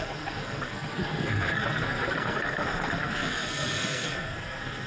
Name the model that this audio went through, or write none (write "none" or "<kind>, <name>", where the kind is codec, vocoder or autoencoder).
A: codec, SNAC